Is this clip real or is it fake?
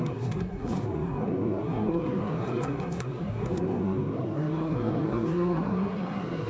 fake